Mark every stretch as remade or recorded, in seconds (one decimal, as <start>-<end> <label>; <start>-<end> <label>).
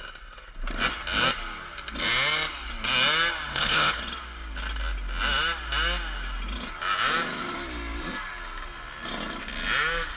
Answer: 0.0-3.5 recorded; 3.5-4.0 remade; 4.0-10.2 recorded